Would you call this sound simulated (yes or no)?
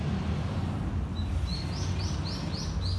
no